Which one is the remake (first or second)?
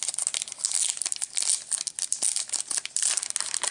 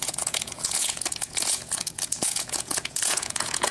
second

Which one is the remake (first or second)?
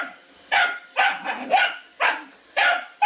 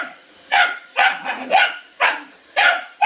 second